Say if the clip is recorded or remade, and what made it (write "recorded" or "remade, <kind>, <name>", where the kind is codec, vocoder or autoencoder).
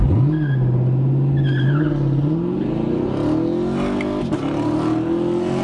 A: recorded